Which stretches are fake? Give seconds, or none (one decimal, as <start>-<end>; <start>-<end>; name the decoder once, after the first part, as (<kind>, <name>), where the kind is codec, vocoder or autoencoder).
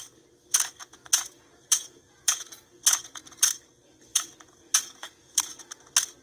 0.8-3.5 (vocoder, Vocos); 4.1-5.8